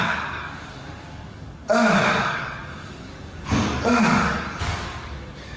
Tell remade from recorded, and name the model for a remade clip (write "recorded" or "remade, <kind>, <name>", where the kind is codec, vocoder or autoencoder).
remade, codec, DAC